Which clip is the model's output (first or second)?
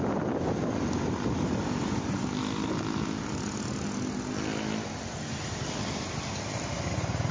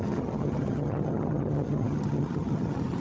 second